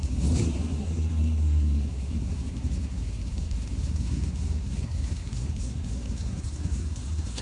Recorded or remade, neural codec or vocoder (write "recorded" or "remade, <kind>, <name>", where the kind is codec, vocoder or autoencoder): remade, codec, SNAC